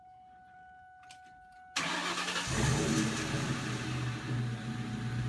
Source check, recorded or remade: recorded